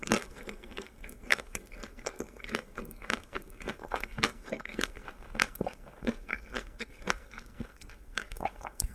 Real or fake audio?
fake